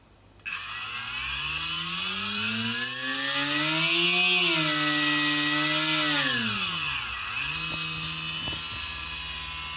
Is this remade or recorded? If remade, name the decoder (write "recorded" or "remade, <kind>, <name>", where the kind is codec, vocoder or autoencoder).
recorded